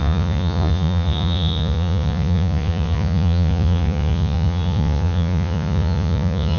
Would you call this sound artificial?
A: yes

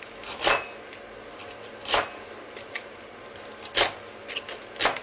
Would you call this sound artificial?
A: no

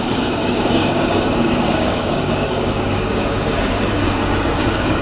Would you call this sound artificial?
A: yes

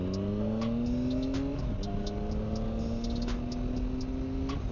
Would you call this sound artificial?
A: no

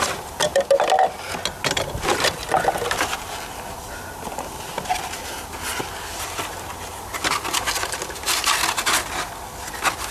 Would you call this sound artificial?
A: no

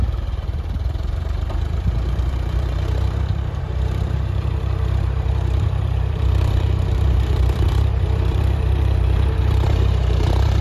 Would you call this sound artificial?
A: yes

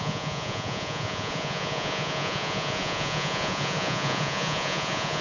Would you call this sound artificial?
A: yes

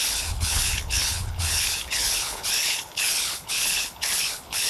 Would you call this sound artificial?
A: yes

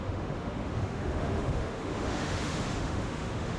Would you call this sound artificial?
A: yes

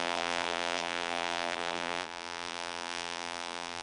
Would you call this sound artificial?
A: yes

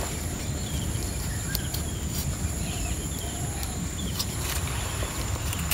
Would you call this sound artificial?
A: yes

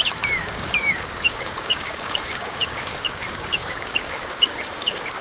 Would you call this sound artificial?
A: yes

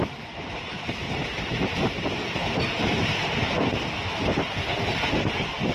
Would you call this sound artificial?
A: yes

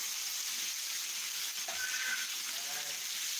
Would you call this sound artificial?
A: yes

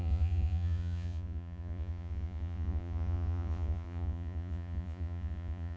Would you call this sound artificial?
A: yes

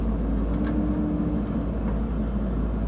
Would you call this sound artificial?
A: no